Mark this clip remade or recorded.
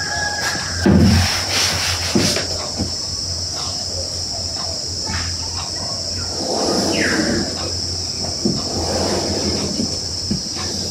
recorded